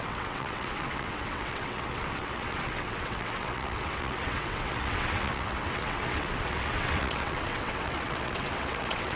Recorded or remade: remade